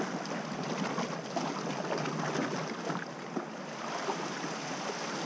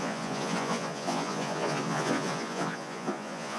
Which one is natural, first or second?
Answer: first